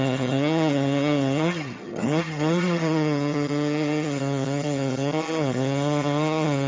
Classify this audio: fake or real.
fake